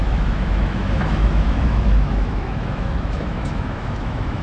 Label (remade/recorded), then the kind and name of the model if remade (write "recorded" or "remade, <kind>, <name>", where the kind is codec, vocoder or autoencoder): remade, autoencoder, DAC-VAE